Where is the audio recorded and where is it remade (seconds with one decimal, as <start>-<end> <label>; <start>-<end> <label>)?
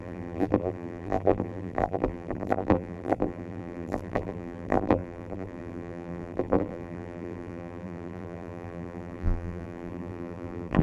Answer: 0.0-10.8 remade